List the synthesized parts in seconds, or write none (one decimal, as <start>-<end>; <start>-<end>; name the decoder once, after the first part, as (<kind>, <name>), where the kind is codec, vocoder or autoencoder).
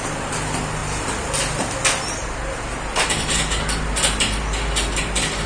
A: none